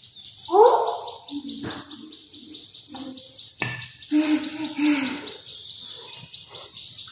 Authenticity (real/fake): fake